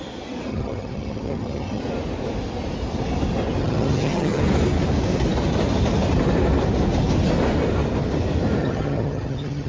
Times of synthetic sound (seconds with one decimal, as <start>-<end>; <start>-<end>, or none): 0.5-1.8; 3.6-4.4; 8.6-9.7